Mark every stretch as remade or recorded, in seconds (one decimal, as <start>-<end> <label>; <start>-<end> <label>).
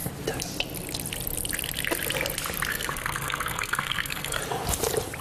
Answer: 0.0-2.7 recorded; 2.7-4.4 remade; 4.4-5.2 recorded